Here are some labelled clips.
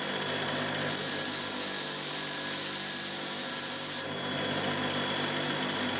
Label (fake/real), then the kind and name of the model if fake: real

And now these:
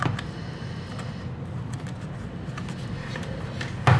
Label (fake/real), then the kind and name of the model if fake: real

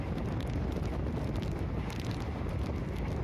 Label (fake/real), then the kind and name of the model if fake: real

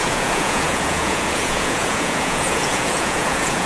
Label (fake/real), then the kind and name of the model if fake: fake, vocoder, Vocos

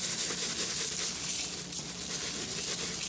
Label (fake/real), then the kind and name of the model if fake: real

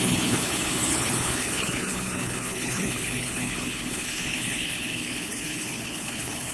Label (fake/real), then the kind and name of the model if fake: fake, codec, HILCodec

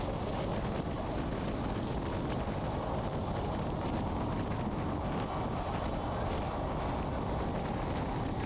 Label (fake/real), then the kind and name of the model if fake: real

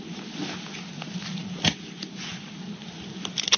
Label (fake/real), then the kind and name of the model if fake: real